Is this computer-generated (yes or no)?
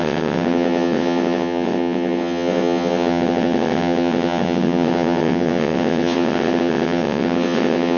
yes